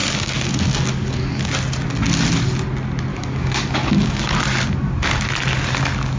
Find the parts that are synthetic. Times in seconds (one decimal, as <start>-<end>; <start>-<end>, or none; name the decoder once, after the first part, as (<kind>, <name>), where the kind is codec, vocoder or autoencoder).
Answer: 0.0-1.5 (codec, DAC); 3.1-4.4